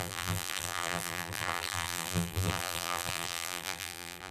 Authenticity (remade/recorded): remade